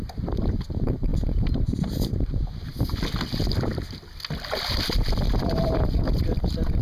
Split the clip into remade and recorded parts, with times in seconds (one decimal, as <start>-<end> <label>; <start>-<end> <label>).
0.0-1.1 remade; 1.1-1.9 recorded; 1.9-2.7 remade; 2.7-5.4 recorded; 5.4-6.8 remade